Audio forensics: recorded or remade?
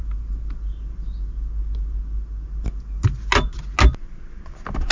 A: recorded